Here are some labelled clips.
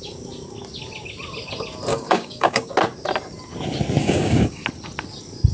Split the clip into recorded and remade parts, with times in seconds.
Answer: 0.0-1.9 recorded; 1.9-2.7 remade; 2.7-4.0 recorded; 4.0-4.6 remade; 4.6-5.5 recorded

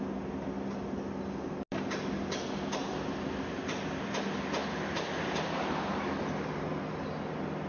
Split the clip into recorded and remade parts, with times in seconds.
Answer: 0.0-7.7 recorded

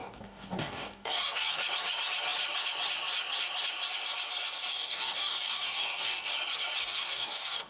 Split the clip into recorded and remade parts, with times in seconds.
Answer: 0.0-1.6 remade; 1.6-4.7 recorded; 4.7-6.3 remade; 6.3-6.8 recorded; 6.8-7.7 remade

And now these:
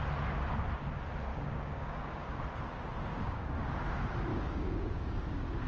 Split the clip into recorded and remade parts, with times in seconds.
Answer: 0.0-1.3 recorded; 1.3-2.4 remade; 2.4-3.1 recorded; 3.1-3.7 remade; 3.7-4.3 recorded; 4.3-5.2 remade; 5.2-5.7 recorded